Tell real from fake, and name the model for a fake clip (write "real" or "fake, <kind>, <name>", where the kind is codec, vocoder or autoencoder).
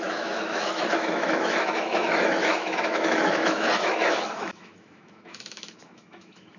fake, autoencoder, DAC-VAE